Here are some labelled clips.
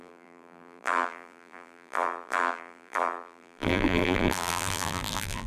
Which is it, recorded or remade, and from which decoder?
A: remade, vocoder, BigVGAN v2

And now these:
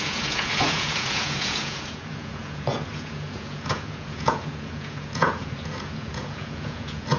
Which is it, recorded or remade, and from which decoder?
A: remade, vocoder, Vocos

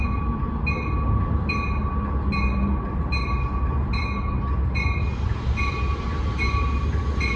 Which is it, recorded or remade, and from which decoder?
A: recorded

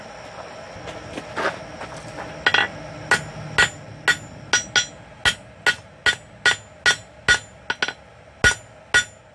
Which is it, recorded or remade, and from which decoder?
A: recorded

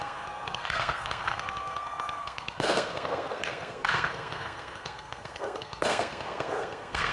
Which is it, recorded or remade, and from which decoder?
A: remade, codec, SNAC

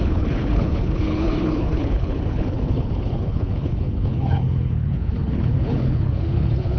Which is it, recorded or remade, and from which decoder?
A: remade, codec, HILCodec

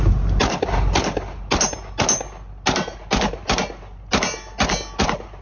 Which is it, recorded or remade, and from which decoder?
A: recorded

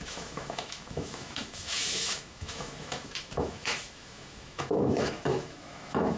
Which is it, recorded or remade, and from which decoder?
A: remade, autoencoder, DAC-VAE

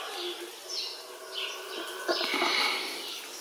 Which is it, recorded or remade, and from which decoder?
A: recorded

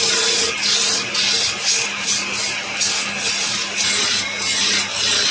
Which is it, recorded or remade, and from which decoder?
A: recorded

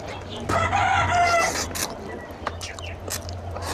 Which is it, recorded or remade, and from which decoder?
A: recorded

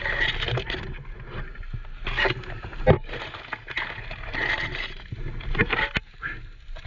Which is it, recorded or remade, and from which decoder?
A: recorded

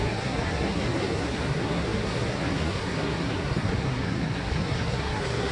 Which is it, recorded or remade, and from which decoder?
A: remade, codec, SNAC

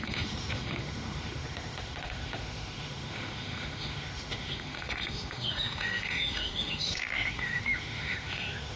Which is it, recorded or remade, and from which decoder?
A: remade, autoencoder, DAC-VAE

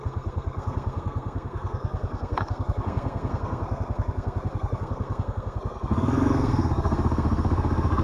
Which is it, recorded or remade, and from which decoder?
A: remade, codec, SNAC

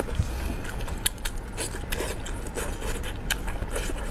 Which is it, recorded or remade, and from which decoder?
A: recorded